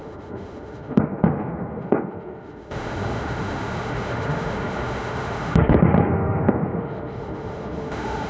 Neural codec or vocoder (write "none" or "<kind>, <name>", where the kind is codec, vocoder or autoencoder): autoencoder, DAC-VAE